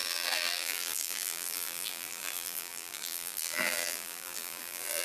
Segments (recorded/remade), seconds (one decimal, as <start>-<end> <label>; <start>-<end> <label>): 0.0-5.0 remade